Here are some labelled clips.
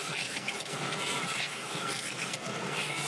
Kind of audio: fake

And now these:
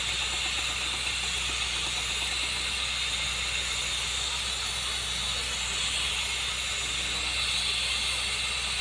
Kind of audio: real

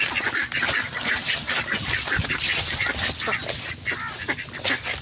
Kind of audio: real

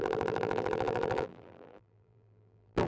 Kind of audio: fake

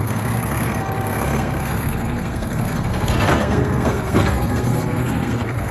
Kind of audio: fake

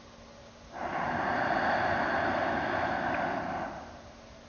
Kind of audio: real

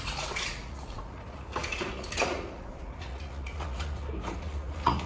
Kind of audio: fake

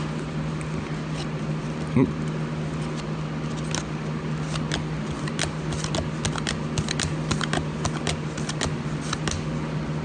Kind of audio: real